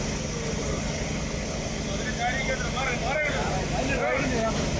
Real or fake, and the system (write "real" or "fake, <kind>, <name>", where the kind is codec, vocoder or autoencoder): real